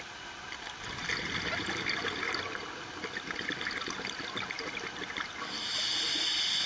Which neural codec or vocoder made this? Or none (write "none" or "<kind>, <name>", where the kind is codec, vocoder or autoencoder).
none